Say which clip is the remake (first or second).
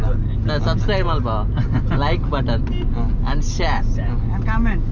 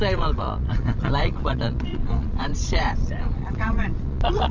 second